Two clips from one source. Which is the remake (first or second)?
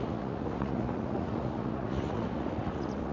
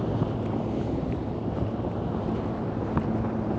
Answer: first